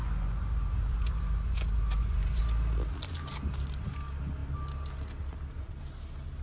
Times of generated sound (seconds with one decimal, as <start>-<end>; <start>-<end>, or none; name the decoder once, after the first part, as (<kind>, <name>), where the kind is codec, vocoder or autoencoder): 0.0-2.4 (vocoder, Vocos)